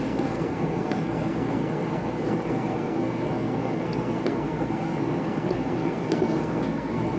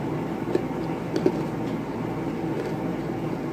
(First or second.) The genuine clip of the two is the second